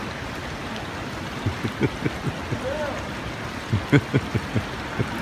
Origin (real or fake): real